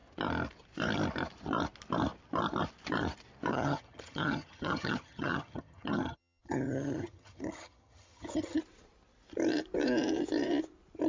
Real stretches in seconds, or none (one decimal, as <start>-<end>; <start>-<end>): 0.0-3.5; 8.6-11.1